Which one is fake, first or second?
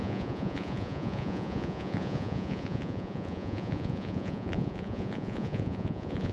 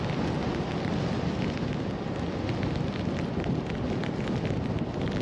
first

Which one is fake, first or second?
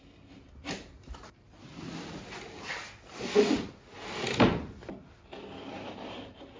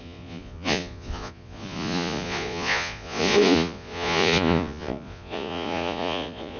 second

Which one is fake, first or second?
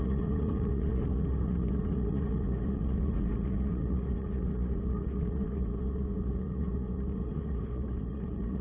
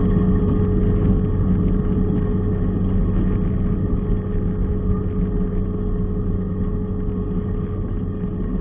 first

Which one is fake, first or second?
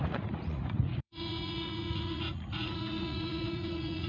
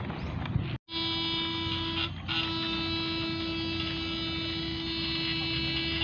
first